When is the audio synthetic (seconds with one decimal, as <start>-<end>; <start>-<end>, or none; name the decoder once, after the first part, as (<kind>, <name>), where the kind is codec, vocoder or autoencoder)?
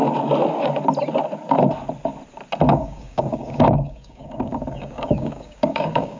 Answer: 2.7-6.2 (codec, DAC)